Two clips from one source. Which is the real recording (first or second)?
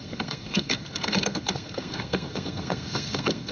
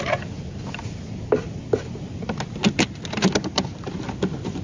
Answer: second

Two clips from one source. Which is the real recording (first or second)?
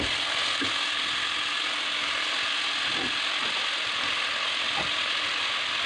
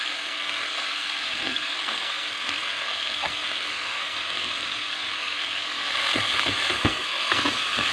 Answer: first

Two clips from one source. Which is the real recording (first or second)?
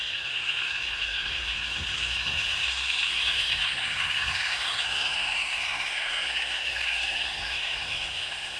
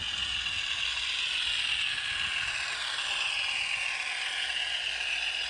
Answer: second